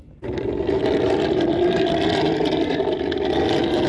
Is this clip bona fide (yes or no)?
yes